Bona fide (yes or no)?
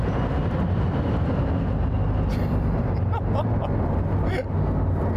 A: yes